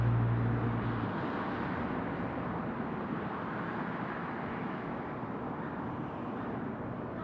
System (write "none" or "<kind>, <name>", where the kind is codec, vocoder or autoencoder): none